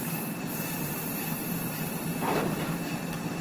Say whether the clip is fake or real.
fake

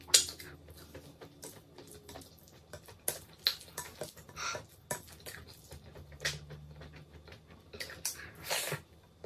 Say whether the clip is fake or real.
real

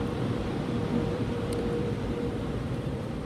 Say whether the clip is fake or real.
fake